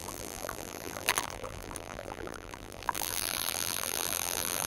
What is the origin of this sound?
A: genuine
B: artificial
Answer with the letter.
B